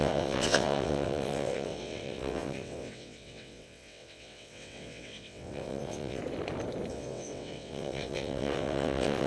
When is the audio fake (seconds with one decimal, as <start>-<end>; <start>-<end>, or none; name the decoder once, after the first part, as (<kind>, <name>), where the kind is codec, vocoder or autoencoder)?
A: 0.0-6.2 (vocoder, WaveNeXt); 6.9-9.3